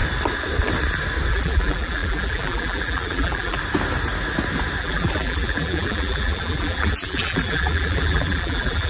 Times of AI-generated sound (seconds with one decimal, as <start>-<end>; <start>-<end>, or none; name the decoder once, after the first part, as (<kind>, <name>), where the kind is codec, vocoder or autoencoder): 1.3-3.6 (vocoder, BigVGAN v2); 4.8-8.9

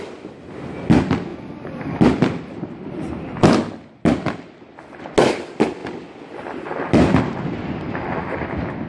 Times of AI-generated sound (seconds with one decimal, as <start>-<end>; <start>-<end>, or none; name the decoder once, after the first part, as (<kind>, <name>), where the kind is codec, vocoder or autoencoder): none

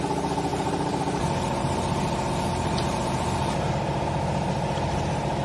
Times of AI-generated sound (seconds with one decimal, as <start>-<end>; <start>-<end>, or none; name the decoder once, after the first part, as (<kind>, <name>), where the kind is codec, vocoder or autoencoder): 0.5-3.7 (vocoder, BigVGAN v2)

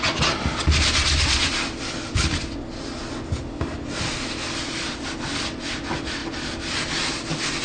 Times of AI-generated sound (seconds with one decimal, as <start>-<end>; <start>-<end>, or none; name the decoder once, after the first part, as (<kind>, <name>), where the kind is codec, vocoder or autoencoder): none